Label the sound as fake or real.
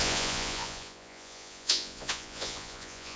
fake